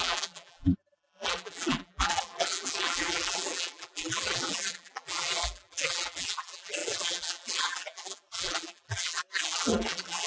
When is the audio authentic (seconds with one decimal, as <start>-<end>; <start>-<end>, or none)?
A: none